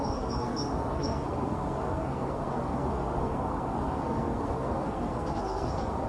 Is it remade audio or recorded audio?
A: remade